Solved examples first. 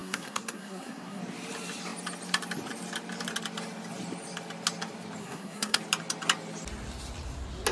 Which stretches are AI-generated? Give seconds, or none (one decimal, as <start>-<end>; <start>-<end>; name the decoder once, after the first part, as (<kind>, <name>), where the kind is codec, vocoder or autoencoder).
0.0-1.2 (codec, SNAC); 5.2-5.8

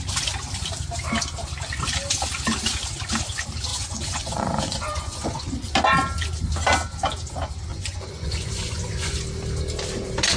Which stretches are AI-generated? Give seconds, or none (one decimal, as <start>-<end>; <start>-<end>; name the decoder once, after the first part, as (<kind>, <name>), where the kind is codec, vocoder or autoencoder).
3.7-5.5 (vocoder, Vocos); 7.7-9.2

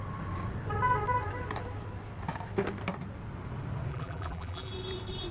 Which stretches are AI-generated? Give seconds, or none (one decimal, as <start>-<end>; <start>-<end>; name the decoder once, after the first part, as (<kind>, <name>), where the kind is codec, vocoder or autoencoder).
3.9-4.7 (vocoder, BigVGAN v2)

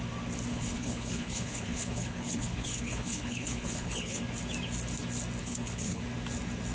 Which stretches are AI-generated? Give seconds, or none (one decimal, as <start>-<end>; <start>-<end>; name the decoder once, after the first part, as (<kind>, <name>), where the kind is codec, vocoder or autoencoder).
0.5-4.2 (codec, HILCodec); 5.4-6.0

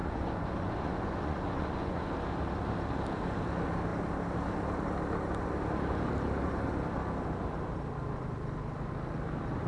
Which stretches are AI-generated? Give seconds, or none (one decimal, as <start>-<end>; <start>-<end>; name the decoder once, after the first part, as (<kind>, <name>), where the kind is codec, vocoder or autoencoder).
0.0-2.0 (vocoder, Vocos)

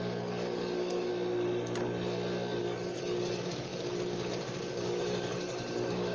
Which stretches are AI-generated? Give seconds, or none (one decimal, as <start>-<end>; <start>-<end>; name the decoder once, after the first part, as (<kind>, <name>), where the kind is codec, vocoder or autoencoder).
0.0-1.1 (codec, DAC); 2.6-6.1

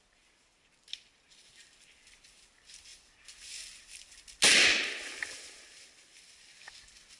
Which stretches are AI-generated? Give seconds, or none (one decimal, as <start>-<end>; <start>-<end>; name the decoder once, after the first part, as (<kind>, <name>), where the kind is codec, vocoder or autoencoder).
none